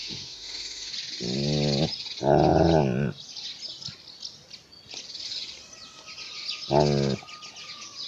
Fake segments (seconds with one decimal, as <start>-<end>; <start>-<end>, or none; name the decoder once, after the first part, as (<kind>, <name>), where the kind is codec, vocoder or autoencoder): 0.0-0.9 (autoencoder, DAC-VAE)